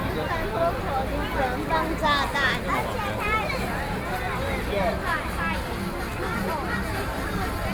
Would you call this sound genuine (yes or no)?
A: yes